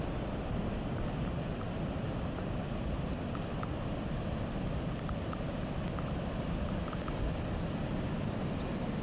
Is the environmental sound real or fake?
real